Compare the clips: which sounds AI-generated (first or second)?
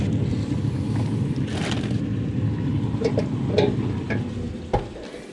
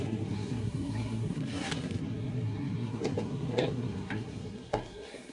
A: second